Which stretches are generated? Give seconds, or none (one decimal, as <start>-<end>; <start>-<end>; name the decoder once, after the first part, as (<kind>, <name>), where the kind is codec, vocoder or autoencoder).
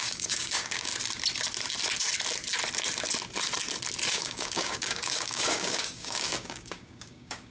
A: 0.0-0.9 (codec, DAC); 4.1-7.5